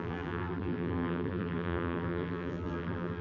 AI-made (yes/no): yes